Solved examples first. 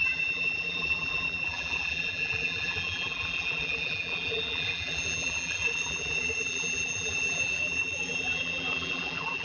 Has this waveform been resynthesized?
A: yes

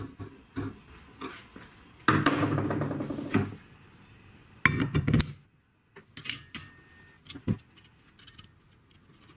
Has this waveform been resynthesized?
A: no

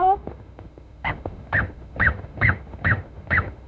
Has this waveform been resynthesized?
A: yes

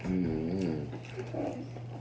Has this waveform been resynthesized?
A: no